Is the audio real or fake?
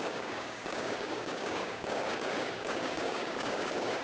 fake